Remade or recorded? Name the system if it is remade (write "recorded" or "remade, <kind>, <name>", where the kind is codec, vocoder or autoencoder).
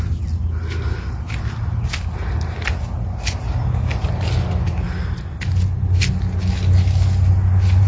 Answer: recorded